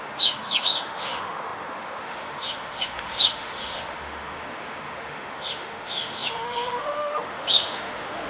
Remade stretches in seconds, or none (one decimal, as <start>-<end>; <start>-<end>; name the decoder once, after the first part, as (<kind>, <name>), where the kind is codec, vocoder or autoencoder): 0.0-8.3 (autoencoder, DAC-VAE)